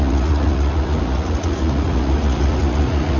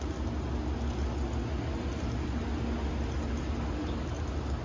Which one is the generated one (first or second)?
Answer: first